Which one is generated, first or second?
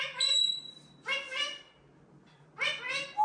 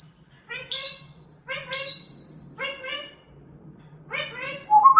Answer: second